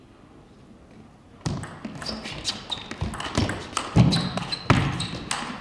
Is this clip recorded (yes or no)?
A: yes